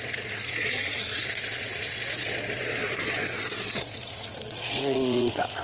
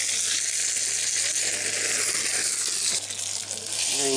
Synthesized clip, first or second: first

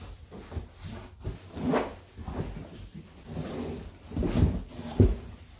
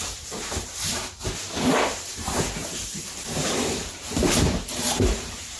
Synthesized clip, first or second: second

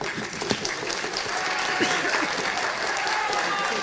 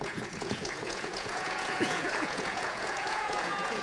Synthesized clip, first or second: second